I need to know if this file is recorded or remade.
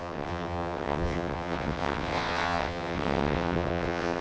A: remade